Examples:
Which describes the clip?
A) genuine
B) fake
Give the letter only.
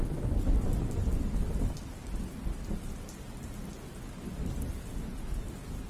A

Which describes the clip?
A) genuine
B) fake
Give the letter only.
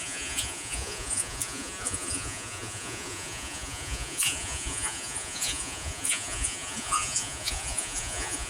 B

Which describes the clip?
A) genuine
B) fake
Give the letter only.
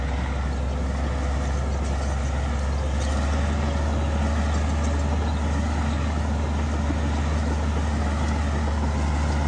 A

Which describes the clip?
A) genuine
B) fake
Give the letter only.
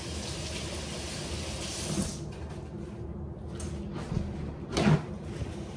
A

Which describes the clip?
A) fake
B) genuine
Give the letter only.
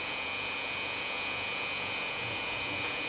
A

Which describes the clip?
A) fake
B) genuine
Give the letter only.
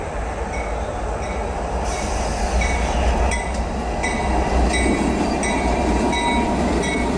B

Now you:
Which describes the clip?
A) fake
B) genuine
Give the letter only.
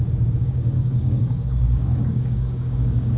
A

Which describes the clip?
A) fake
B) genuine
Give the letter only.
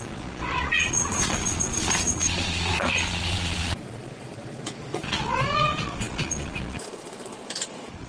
A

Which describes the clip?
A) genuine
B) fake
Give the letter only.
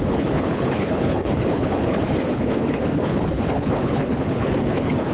B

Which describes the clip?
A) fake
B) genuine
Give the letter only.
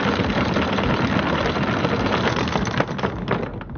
B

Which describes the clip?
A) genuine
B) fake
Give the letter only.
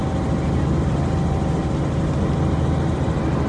A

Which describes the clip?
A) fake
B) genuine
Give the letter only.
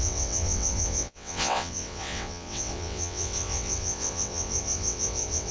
A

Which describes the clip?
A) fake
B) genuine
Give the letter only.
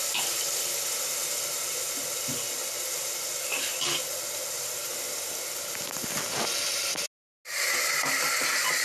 B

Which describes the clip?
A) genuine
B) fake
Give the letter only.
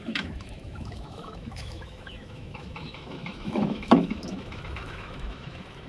B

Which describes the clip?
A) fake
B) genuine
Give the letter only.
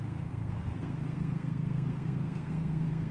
A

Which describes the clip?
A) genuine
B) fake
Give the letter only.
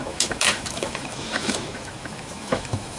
B